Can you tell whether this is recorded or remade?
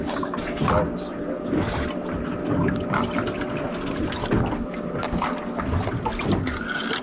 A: recorded